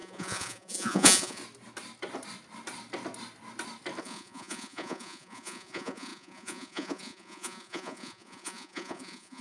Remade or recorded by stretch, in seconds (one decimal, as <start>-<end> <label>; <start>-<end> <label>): 0.0-1.4 remade; 1.4-4.0 recorded; 4.0-9.4 remade